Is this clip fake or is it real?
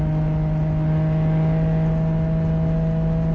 real